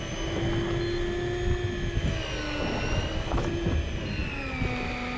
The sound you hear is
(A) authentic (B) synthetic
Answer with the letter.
A